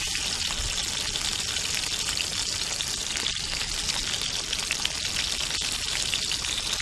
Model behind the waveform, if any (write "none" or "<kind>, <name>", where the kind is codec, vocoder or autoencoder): none